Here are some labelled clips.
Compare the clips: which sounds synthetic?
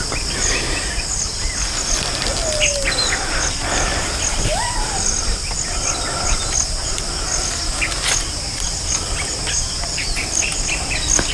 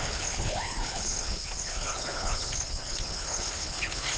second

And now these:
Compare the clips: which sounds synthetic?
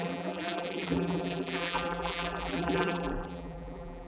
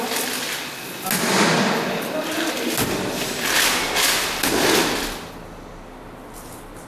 first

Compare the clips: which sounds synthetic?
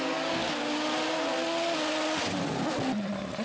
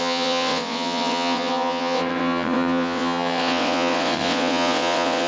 second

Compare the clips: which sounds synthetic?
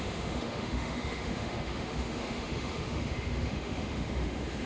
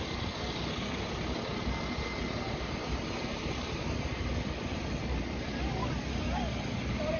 first